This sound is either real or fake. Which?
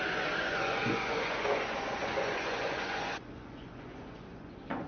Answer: fake